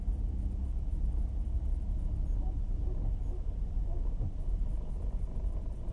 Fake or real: real